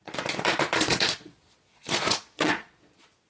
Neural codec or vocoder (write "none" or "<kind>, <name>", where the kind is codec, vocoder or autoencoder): vocoder, Vocos